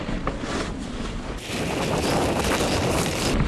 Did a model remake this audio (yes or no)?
no